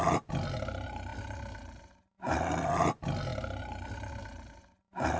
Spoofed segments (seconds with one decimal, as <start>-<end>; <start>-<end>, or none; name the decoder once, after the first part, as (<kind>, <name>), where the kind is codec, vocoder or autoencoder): none